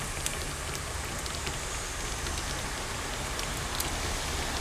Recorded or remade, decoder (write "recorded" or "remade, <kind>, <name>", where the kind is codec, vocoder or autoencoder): recorded